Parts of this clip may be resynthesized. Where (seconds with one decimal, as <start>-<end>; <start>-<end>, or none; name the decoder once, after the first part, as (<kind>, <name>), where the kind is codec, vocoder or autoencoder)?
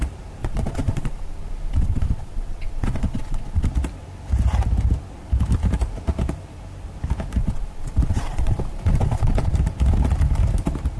0.4-3.7 (vocoder, Vocos); 7.4-9.5